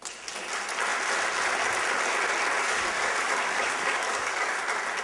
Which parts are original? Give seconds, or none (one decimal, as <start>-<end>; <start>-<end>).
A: 0.0-2.6; 4.6-5.0